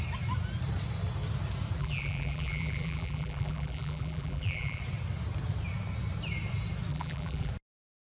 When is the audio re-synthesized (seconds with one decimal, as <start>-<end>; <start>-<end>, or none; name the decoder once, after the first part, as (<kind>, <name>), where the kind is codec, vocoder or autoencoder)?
1.8-4.8 (vocoder, BigVGAN v2); 6.9-7.5